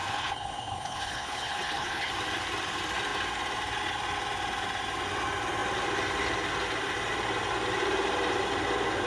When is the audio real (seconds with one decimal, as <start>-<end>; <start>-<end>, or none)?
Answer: 2.1-9.1